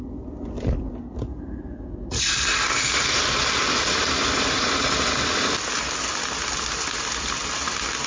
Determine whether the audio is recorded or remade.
recorded